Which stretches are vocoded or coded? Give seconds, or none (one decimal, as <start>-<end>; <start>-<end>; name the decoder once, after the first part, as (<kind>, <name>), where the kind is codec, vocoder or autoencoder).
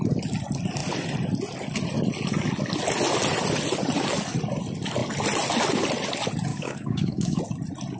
6.5-7.4 (codec, DAC)